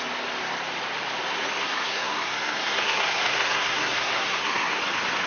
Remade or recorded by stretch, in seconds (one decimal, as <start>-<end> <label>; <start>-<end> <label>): 0.0-1.6 recorded; 1.6-4.8 remade; 4.8-5.3 recorded